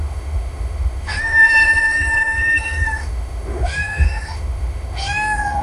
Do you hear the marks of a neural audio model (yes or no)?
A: yes